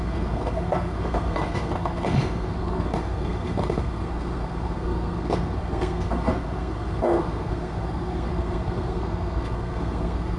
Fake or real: fake